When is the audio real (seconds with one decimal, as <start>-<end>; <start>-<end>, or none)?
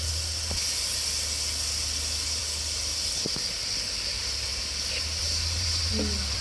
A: 0.0-4.5; 5.9-6.4